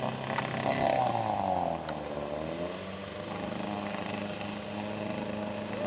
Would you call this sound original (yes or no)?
yes